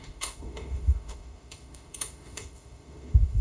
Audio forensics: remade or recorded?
remade